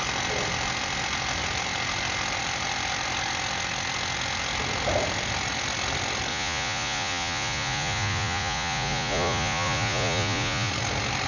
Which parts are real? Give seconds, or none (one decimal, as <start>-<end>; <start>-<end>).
0.0-6.3; 10.7-11.3